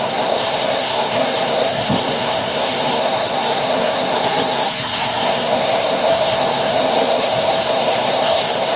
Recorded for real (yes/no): no